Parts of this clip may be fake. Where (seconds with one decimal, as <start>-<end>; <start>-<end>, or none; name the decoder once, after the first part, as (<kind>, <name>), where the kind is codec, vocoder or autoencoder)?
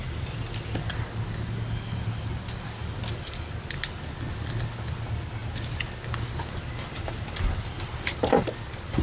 none